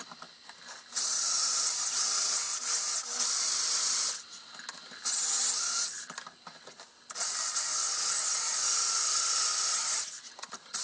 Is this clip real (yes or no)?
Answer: yes